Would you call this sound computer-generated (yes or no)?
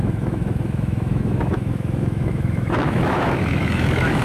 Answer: yes